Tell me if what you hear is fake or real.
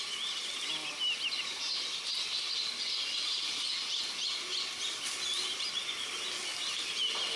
real